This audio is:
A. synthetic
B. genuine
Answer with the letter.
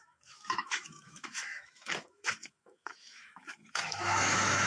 A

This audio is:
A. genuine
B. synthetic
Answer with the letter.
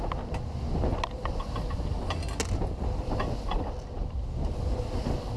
A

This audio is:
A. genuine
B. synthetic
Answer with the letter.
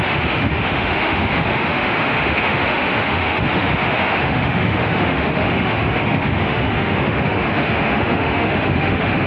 B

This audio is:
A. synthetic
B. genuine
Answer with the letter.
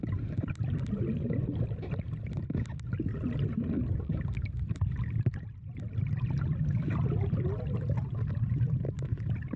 B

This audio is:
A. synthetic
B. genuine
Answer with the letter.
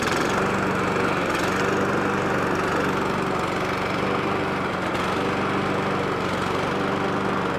B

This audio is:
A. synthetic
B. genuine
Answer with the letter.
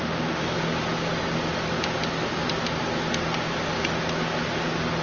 B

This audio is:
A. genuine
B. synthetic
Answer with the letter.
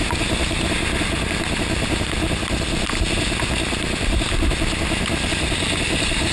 A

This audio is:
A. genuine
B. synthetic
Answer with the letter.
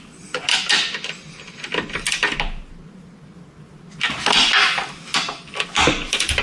A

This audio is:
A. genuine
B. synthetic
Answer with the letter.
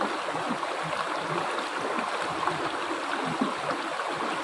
A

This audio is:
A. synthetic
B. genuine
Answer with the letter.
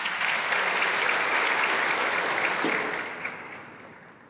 B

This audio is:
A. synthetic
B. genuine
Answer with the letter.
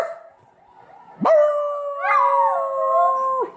B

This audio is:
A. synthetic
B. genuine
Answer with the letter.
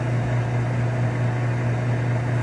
B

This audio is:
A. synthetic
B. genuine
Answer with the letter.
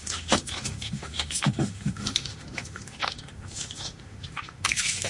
A